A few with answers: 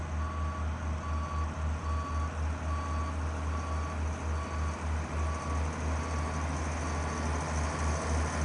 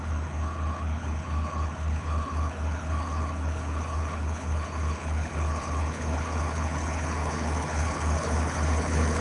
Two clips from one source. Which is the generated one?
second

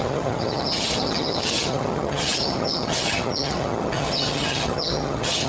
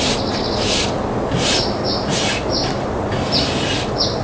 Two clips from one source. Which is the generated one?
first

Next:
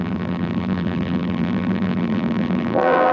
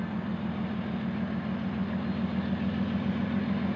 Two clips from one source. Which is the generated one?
first